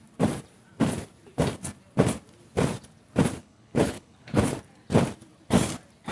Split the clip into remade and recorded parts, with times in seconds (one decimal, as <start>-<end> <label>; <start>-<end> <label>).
0.0-3.4 recorded; 3.4-4.5 remade; 4.5-6.1 recorded